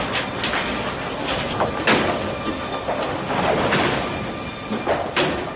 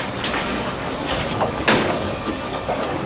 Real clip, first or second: first